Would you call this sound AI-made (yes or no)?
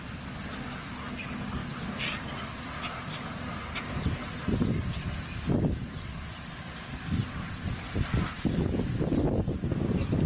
no